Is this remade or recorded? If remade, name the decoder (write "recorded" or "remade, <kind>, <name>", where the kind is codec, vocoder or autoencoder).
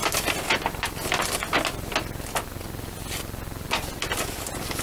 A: recorded